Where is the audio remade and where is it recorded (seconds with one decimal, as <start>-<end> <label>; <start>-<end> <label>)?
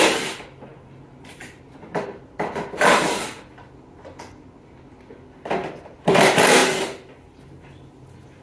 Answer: 0.0-8.4 recorded